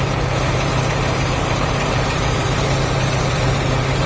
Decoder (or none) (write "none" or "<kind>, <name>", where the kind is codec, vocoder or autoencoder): vocoder, BigVGAN v2